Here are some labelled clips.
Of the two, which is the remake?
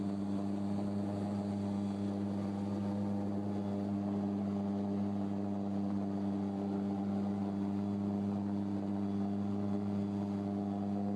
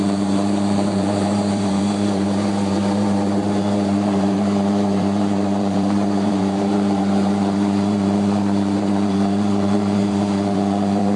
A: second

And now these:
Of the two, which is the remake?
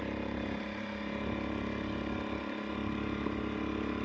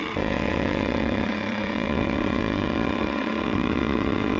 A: second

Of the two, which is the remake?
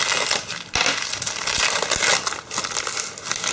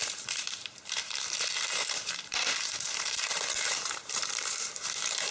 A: second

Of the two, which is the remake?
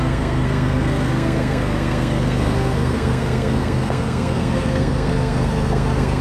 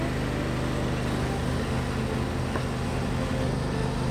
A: first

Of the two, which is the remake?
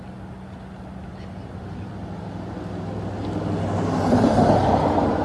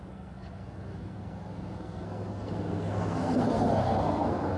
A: second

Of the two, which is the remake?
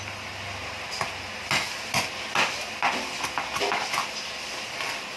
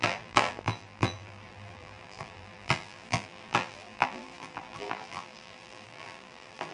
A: second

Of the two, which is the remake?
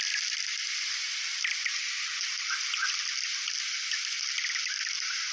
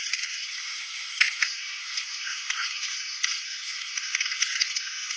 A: second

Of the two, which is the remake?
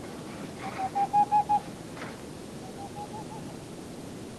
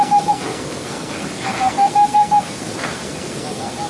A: second